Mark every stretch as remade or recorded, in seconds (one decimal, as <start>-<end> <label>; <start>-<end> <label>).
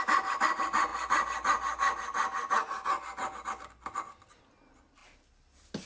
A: 0.0-5.9 recorded